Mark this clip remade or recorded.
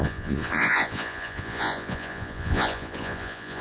remade